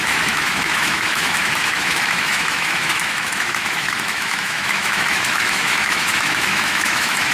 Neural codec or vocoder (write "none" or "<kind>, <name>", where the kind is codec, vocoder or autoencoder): autoencoder, DAC-VAE